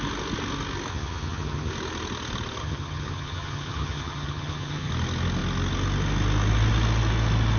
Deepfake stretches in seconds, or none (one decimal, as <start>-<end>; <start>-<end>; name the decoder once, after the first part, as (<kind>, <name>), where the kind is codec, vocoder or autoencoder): 0.9-1.7 (vocoder, HiFi-GAN); 2.6-4.9